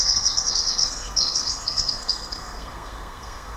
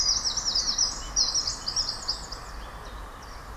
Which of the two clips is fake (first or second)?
first